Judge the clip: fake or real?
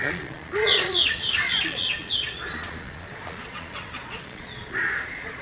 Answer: fake